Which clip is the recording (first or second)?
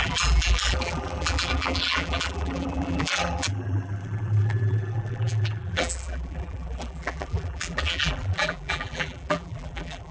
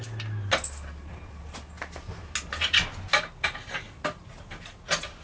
second